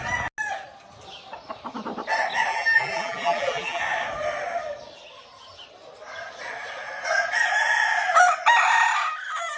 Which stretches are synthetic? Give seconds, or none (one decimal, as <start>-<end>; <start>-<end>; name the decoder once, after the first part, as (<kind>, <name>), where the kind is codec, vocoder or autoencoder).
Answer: 2.5-3.8 (vocoder, BigVGAN v2)